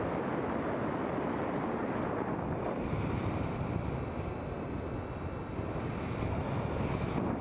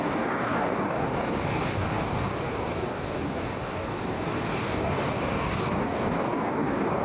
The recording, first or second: first